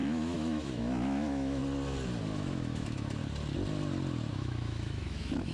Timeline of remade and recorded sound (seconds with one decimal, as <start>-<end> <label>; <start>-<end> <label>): 0.0-1.6 remade; 1.6-2.2 recorded; 2.2-3.2 remade; 3.2-4.3 recorded; 4.3-5.5 remade